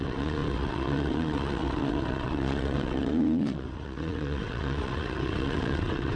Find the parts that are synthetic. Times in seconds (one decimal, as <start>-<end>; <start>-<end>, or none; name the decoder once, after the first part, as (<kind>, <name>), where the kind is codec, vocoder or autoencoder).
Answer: 0.0-6.2 (vocoder, WaveNeXt)